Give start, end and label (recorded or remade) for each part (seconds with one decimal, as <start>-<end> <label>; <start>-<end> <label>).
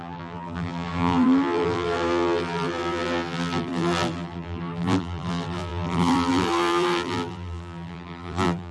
0.0-8.7 remade